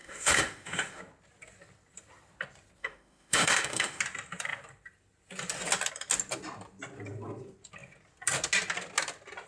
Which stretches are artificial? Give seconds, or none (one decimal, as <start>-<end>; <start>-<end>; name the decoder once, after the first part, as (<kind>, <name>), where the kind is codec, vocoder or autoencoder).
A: 0.0-1.0 (autoencoder, DAC-VAE); 2.8-4.0